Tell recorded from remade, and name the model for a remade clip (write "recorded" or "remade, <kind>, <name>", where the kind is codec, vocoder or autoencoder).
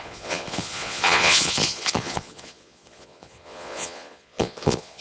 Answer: remade, vocoder, Vocos